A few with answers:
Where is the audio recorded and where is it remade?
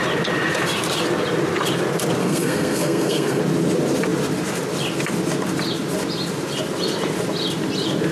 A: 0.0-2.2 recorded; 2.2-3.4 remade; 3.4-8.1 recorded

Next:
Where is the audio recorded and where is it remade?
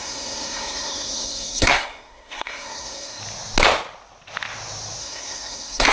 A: 0.0-3.2 remade; 3.2-5.0 recorded; 5.0-5.9 remade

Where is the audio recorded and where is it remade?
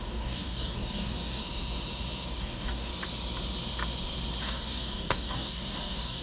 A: 0.0-1.4 remade; 1.4-2.4 recorded; 2.4-2.9 remade; 2.9-4.4 recorded; 4.4-6.2 remade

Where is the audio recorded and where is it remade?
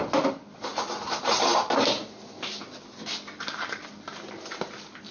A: 0.0-5.1 recorded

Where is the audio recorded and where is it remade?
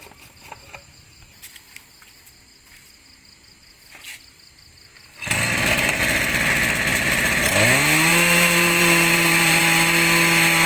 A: 0.0-6.9 recorded; 6.9-7.5 remade; 7.5-8.1 recorded; 8.1-9.6 remade; 9.6-10.7 recorded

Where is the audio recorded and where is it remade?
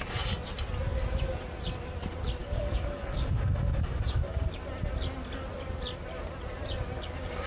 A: 0.0-2.4 recorded; 2.4-4.5 remade; 4.5-7.5 recorded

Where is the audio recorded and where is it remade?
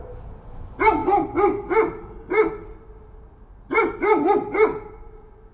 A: 0.0-5.5 recorded